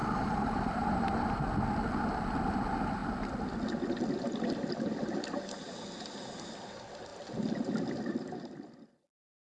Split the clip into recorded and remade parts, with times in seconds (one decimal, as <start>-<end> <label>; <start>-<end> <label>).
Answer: 0.0-1.4 remade; 1.4-9.4 recorded